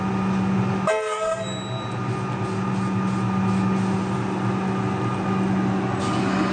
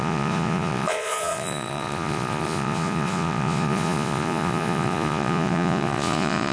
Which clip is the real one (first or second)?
first